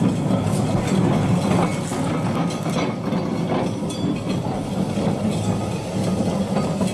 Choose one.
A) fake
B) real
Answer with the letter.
B